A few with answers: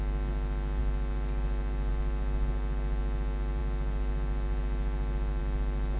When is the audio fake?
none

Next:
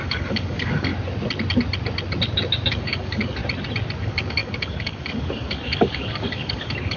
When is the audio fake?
0.0-0.9 (codec, DAC); 2.7-3.4; 4.0-7.0

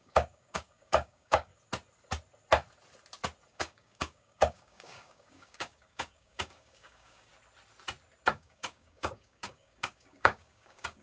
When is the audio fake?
0.0-1.5 (codec, DAC); 3.5-7.3; 8.3-11.0

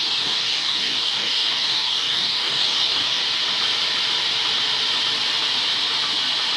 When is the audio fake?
0.0-3.2 (codec, DAC)

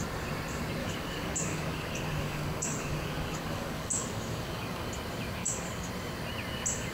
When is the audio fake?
0.8-4.9 (codec, DAC); 5.4-5.9

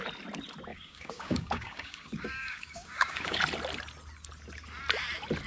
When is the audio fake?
0.7-3.4 (codec, DAC)

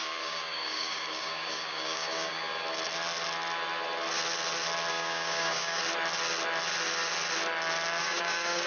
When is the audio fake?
0.0-2.5 (codec, DAC); 4.9-5.8; 8.0-8.7

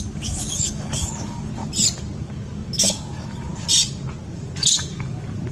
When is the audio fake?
0.0-1.6 (codec, DAC); 2.2-3.5; 4.2-5.5